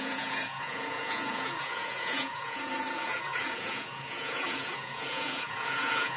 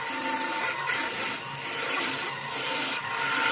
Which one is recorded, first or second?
second